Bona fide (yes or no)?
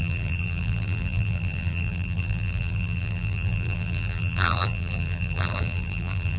no